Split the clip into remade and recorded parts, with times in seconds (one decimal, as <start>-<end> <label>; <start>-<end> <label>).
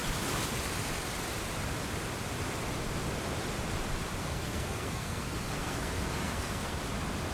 0.0-4.2 recorded; 4.2-6.8 remade; 6.8-7.3 recorded